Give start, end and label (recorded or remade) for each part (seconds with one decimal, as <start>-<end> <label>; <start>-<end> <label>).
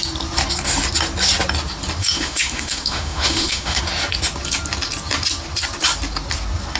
0.0-2.0 recorded; 2.0-3.8 remade; 3.8-6.8 recorded